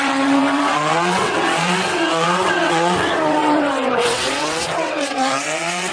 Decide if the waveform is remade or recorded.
remade